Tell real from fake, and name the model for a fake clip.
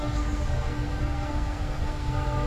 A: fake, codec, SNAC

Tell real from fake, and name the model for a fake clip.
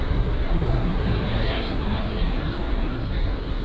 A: fake, codec, SNAC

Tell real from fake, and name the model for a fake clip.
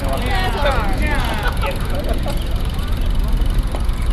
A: real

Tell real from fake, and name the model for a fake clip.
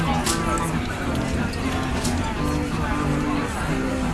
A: real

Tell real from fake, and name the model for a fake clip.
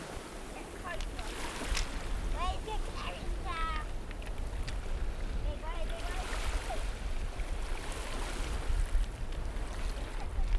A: real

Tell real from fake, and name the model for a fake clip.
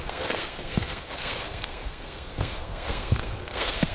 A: fake, codec, SNAC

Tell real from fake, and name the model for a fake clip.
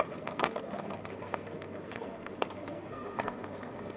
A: fake, codec, SNAC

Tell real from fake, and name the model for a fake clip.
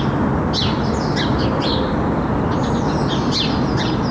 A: real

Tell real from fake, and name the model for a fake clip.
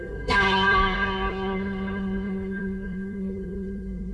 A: fake, codec, SNAC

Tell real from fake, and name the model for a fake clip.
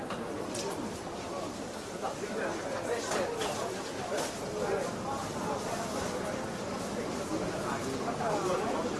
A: real